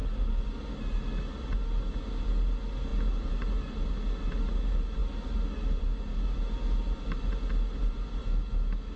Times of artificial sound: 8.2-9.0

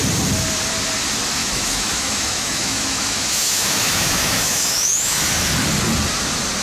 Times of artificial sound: 1.4-5.3

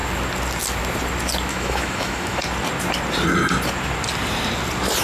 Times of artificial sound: 1.5-2.4

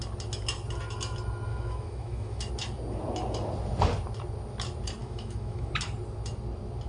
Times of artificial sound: 1.5-2.5; 5.0-5.7

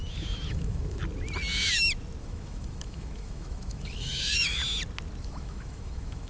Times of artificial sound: 0.5-1.0; 2.2-4.6; 5.2-6.3

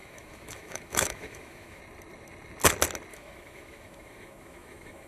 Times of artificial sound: 0.0-1.8; 3.1-5.1

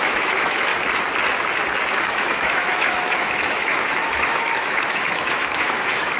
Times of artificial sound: 0.0-0.7; 1.9-6.2